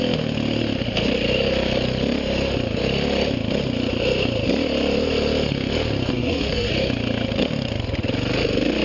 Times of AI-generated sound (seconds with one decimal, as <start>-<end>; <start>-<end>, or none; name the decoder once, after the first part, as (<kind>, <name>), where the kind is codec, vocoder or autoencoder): 6.1-6.7 (codec, SNAC)